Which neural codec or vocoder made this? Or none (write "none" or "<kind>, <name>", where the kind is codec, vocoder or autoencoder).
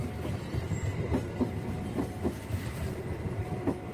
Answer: none